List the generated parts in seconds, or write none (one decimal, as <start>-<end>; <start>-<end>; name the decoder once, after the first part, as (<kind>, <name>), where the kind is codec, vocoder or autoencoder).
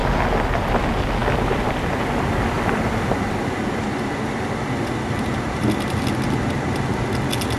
1.2-5.6 (vocoder, BigVGAN v2)